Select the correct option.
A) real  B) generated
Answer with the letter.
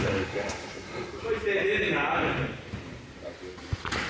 A